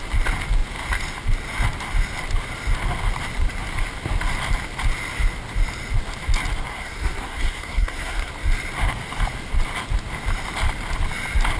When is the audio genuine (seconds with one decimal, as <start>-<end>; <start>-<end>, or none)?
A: 0.0-6.7; 8.3-11.6

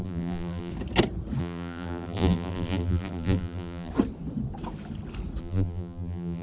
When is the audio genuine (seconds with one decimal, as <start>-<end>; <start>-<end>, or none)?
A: 0.7-1.4; 3.9-5.4

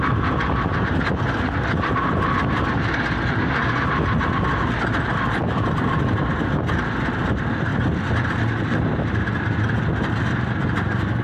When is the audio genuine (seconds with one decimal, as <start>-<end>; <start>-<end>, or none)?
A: 0.0-7.7; 9.6-11.2

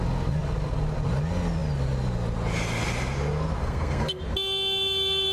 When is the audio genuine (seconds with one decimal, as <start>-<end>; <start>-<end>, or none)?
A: 0.0-3.6; 4.2-5.3